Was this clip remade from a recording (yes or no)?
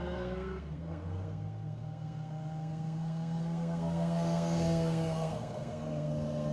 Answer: yes